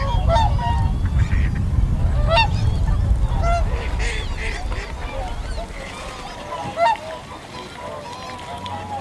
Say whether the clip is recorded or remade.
recorded